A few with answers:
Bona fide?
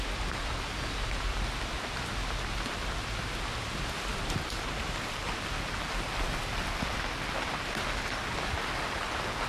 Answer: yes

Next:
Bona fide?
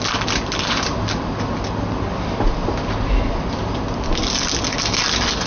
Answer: yes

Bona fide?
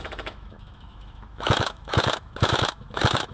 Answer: no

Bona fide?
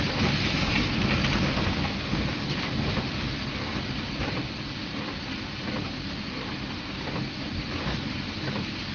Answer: yes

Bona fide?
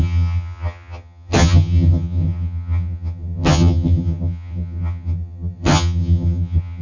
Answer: no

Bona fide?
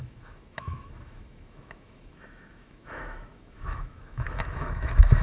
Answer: no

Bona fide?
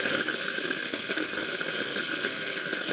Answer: no